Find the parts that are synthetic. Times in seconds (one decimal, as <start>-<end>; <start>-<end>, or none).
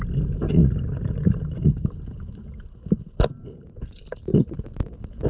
4.3-4.8